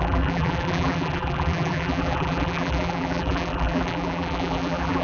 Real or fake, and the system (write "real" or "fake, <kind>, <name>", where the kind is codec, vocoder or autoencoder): fake, vocoder, BigVGAN v2